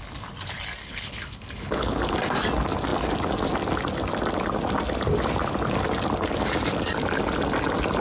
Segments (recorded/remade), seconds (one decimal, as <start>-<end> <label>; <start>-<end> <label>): 0.0-0.8 recorded; 0.8-2.1 remade; 2.1-8.0 recorded